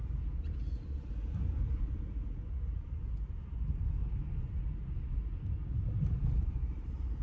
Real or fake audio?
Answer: real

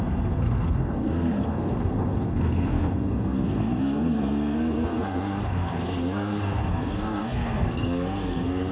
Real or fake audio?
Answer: fake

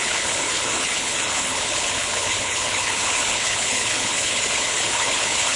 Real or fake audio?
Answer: fake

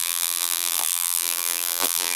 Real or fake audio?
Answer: fake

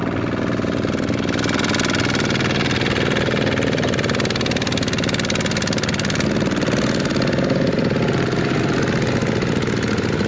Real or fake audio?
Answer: real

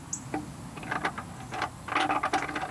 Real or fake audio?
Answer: real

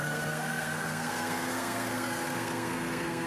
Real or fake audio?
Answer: fake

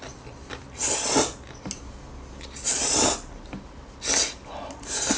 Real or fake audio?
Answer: real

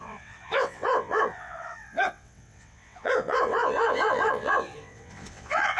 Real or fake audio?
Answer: fake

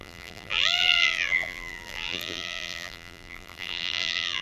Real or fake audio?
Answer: fake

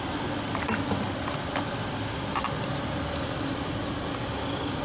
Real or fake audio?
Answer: real